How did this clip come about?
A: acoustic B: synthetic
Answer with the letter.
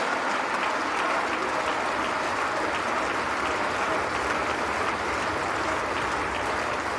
A